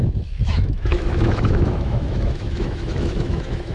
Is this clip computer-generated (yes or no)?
yes